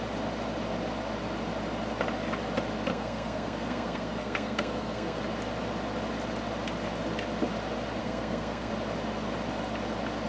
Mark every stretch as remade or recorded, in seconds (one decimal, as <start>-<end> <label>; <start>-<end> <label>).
0.0-2.9 recorded; 2.9-5.2 remade; 5.2-8.0 recorded; 8.0-8.7 remade; 8.7-10.3 recorded